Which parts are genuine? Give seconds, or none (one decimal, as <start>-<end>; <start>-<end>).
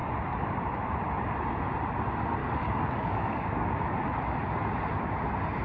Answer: 0.0-2.4; 3.8-5.6